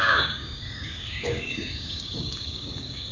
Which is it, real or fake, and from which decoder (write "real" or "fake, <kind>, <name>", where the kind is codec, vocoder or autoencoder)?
fake, codec, DAC